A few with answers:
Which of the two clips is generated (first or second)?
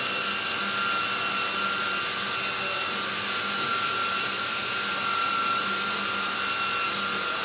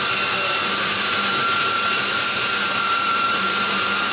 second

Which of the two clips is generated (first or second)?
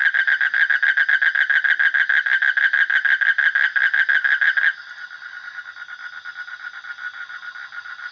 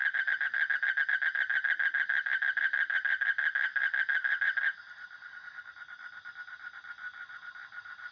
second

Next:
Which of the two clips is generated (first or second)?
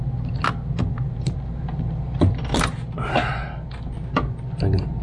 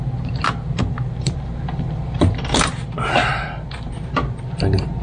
second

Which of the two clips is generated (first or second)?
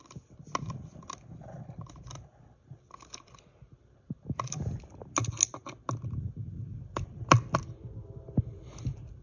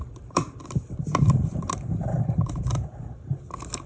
second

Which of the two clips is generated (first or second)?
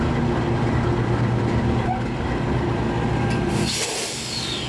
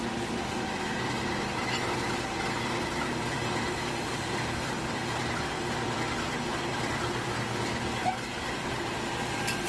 second